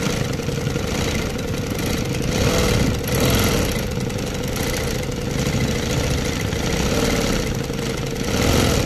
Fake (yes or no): no